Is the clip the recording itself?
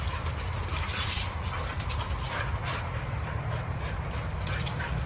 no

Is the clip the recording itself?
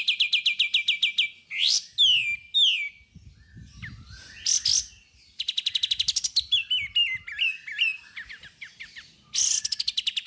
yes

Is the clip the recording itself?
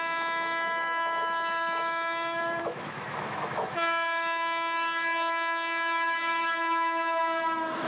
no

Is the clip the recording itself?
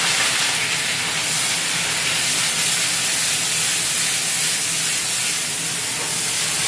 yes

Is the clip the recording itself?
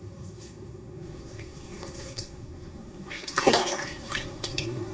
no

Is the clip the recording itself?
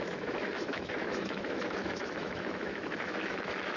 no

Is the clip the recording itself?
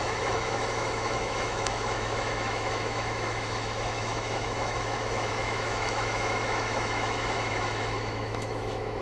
no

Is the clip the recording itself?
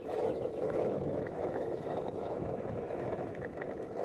no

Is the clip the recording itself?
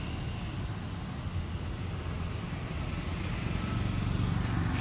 yes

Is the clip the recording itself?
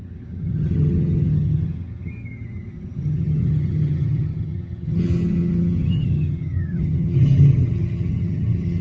no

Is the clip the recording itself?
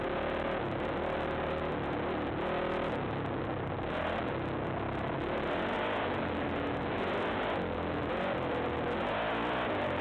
yes